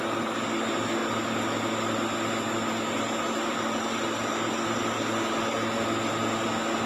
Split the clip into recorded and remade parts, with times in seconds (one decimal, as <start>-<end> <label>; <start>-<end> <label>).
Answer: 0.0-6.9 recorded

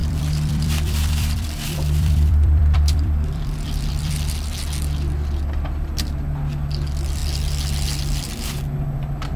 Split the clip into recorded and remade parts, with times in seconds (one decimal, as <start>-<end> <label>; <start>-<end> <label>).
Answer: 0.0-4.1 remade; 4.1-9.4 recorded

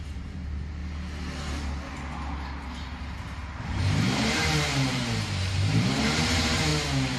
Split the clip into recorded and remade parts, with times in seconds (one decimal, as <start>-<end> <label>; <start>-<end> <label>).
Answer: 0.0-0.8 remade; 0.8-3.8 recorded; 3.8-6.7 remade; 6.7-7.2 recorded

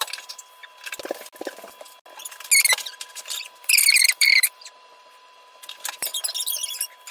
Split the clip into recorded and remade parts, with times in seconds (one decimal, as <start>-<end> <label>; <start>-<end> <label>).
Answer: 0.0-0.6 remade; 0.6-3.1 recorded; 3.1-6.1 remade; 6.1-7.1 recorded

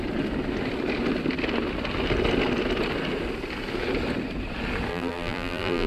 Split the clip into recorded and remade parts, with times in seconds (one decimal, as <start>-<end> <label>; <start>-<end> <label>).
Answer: 0.0-4.9 recorded; 4.9-5.9 remade

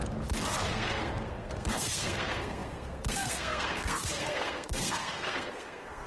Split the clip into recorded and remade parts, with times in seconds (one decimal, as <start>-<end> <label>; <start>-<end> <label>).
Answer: 0.0-0.7 recorded; 0.7-6.1 remade

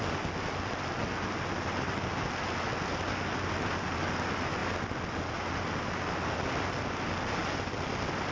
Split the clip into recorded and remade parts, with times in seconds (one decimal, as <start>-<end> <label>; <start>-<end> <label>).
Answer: 0.0-8.3 recorded